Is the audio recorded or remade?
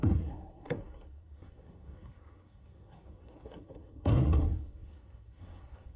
remade